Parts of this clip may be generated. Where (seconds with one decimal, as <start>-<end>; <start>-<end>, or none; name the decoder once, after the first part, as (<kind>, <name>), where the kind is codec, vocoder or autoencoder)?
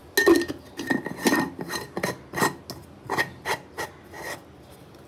none